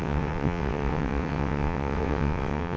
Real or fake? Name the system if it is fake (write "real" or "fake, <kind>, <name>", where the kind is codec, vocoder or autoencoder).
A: fake, vocoder, WaveNeXt